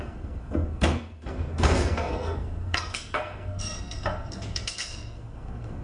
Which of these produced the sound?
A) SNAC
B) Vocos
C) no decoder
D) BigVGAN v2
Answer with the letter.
A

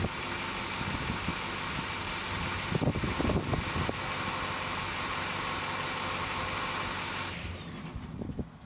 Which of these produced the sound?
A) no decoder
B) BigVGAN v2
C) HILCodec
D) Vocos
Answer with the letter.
A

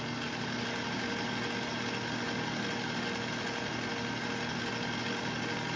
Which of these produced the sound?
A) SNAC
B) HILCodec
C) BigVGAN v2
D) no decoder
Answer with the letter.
D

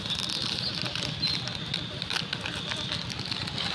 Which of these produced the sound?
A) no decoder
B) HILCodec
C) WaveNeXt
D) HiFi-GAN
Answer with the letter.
A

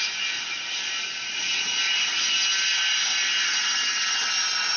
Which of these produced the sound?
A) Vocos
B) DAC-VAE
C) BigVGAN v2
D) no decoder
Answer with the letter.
D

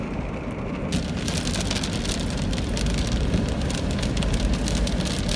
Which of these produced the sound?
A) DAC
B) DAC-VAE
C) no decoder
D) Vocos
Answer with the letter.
C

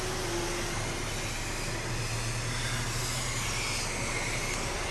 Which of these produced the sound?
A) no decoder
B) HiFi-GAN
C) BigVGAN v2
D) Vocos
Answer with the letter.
A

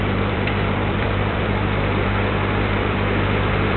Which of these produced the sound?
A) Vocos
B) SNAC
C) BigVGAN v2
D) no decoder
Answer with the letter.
C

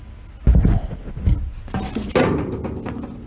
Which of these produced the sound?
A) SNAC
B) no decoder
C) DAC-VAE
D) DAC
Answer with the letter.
B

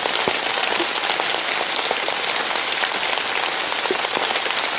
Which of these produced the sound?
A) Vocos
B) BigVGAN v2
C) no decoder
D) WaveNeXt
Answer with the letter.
C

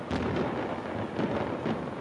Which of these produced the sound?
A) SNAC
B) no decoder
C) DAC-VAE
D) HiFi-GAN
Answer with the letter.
B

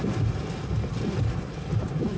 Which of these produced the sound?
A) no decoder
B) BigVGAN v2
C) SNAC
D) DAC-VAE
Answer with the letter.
A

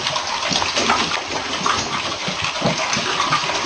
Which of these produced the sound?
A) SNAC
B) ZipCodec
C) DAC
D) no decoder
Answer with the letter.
D